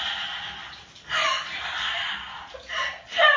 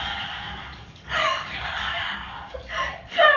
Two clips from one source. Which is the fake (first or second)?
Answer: second